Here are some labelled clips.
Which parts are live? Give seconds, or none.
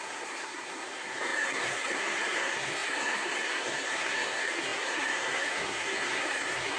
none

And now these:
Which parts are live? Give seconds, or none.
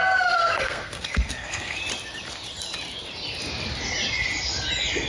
1.8-5.1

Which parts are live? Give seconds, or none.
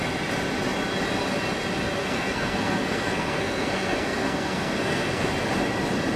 0.0-2.0; 5.3-6.2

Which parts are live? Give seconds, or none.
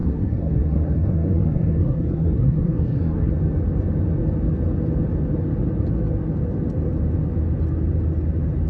3.3-8.7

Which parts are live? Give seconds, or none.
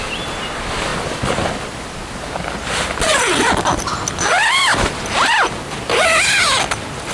0.0-7.1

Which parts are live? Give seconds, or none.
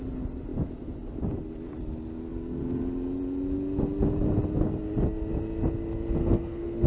0.0-6.2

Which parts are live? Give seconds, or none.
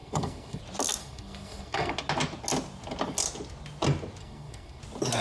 0.6-1.0; 1.9-4.2; 4.8-5.2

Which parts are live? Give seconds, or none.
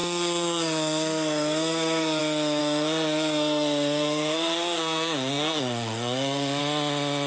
2.2-2.6; 6.6-7.3